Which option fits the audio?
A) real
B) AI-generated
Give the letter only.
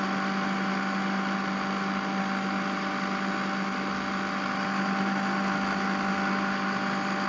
A